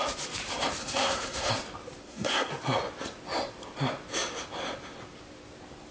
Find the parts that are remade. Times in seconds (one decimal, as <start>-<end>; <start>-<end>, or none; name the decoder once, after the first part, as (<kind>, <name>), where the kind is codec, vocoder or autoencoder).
0.8-1.5 (codec, SNAC); 2.0-2.5